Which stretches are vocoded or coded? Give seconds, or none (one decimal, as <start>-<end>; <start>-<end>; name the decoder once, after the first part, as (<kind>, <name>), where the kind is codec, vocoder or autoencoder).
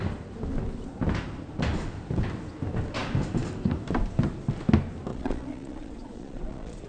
5.1-6.9 (vocoder, Vocos)